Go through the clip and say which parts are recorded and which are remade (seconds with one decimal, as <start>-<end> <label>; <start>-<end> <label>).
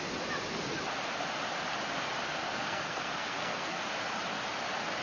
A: 0.0-2.4 recorded; 2.4-3.8 remade; 3.8-5.0 recorded